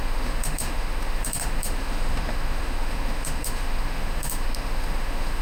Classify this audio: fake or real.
fake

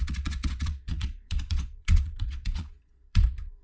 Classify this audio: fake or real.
fake